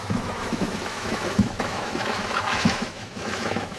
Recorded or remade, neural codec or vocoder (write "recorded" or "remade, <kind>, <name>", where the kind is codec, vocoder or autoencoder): remade, autoencoder, DAC-VAE